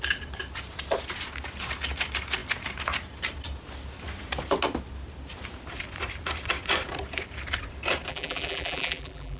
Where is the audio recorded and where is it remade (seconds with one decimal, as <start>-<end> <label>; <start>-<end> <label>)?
0.0-8.1 recorded; 8.1-9.4 remade